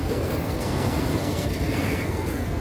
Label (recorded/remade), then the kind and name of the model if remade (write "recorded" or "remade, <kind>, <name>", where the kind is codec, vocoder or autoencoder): remade, codec, SNAC